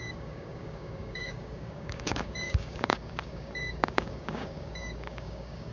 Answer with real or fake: fake